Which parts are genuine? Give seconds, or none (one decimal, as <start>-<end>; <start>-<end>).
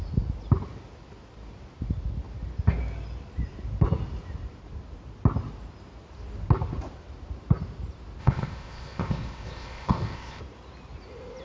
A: 0.0-8.2; 10.4-11.4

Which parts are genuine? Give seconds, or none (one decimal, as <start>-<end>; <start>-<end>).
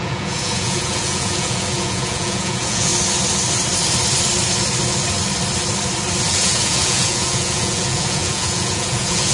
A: 2.9-6.3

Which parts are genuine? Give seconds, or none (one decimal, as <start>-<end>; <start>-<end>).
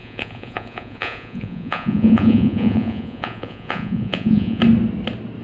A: 4.6-5.4